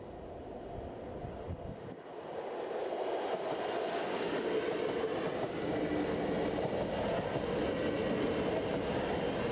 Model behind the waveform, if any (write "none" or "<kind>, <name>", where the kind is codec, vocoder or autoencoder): none